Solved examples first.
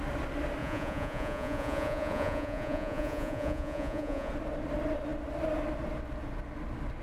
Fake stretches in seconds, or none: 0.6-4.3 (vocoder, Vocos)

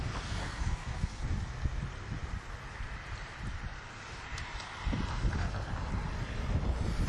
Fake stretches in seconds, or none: 0.4-1.2 (codec, SNAC)

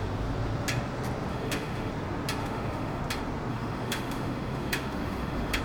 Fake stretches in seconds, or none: 1.3-1.9 (autoencoder, DAC-VAE); 2.4-3.0; 3.5-5.6

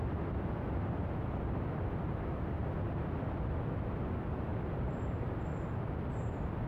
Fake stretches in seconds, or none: none

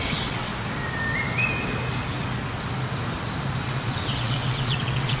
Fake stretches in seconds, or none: 0.0-0.5 (vocoder, WaveNeXt); 3.6-5.2